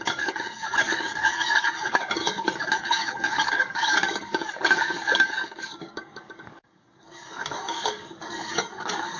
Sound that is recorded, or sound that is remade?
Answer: remade